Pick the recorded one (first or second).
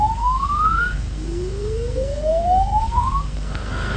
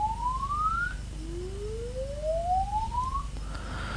second